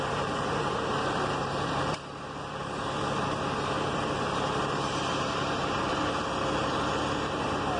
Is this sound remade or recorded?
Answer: remade